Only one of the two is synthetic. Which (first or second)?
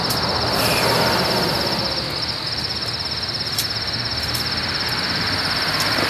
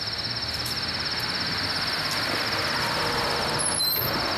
first